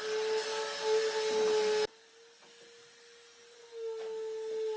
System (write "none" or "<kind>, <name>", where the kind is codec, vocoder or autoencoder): none